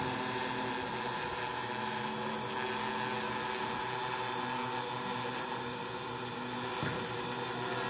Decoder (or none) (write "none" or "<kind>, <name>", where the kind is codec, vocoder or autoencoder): none